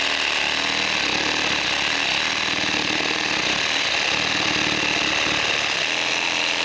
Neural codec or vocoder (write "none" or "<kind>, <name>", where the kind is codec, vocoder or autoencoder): none